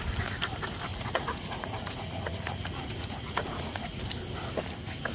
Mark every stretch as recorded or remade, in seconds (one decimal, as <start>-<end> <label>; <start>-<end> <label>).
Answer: 0.0-0.9 recorded; 0.9-4.0 remade; 4.0-5.1 recorded